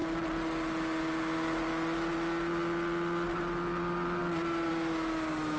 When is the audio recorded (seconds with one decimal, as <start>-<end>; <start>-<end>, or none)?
0.0-5.6